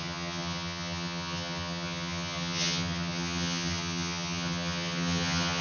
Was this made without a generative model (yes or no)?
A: no